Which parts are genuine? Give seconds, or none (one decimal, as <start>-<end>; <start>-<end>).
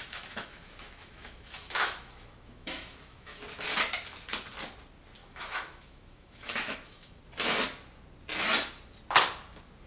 3.4-5.2; 7.2-9.9